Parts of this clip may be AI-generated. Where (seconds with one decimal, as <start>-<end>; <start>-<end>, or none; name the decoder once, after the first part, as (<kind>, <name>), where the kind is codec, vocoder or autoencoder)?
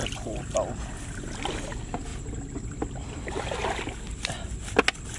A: 2.1-3.8 (vocoder, BigVGAN v2)